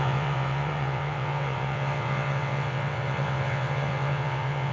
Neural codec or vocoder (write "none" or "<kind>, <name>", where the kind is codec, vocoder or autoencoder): vocoder, WaveNeXt